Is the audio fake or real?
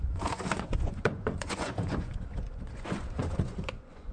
fake